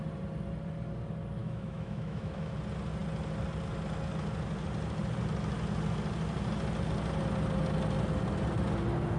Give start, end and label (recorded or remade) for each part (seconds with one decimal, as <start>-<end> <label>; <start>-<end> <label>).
0.0-1.4 recorded; 1.4-2.5 remade; 2.5-9.2 recorded